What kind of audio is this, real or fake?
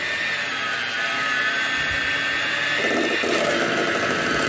real